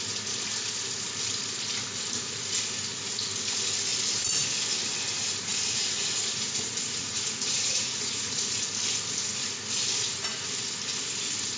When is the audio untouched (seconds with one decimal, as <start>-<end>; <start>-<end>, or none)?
0.0-5.5; 8.7-11.6